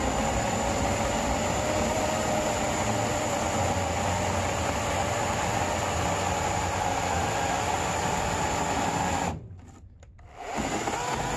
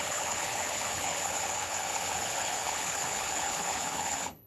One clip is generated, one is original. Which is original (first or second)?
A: first